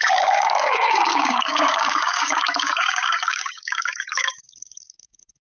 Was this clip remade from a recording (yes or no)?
yes